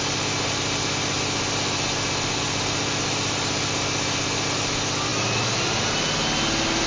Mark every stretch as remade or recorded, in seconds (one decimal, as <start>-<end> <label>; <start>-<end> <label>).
0.0-6.9 recorded